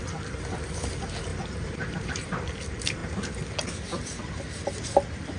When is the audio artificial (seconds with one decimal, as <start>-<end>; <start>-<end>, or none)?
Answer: 1.3-2.6